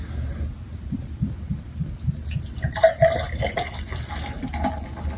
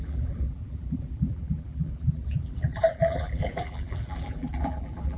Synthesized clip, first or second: second